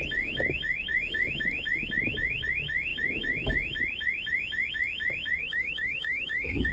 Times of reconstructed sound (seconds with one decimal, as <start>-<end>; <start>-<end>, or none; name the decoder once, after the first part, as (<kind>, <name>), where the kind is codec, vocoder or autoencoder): 5.4-6.7 (autoencoder, DAC-VAE)